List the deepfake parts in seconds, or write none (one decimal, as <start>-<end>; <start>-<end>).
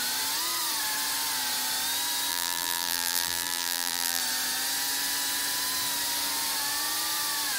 2.3-4.2